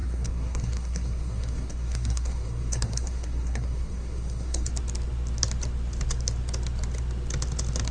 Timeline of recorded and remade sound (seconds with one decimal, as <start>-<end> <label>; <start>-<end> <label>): 0.0-4.7 remade; 4.7-7.9 recorded